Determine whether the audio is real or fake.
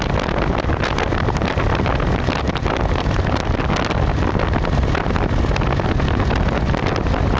real